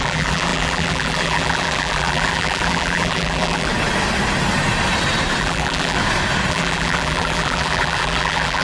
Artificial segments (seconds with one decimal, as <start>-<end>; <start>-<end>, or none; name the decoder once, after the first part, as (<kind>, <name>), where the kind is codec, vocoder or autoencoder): 0.0-3.7 (vocoder, BigVGAN v2); 5.4-6.0; 6.5-8.6

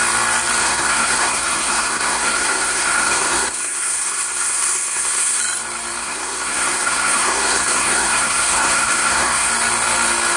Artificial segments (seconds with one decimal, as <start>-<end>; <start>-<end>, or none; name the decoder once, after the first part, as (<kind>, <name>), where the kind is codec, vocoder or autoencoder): 0.6-5.4 (codec, SNAC); 6.0-9.5

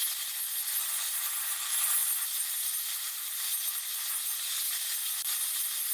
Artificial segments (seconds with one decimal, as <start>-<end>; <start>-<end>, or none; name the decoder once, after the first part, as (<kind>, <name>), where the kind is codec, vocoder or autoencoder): 2.0-3.8 (vocoder, BigVGAN v2); 5.0-5.9

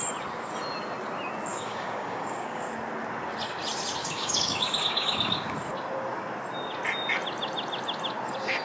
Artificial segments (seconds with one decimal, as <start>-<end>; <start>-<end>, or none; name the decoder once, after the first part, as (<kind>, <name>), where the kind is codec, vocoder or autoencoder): 1.5-2.7 (codec, DAC); 4.0-5.4

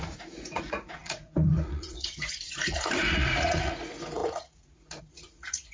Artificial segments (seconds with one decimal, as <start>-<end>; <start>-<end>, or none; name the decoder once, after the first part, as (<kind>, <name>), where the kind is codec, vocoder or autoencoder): 0.0-5.7 (vocoder, Vocos)

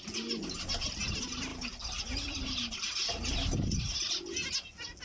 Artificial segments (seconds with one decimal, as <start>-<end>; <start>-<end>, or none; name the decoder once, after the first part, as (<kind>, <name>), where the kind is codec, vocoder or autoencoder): none

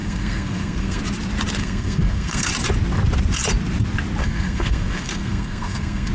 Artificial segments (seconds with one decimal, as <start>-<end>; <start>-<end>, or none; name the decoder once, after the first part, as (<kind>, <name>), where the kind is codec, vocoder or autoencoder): 0.0-1.0 (codec, SNAC); 1.6-2.5; 4.2-6.1